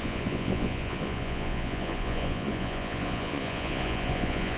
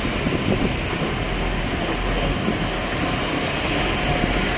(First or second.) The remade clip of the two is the first